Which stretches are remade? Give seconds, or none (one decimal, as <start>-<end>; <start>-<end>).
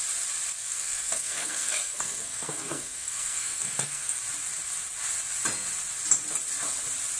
0.6-4.2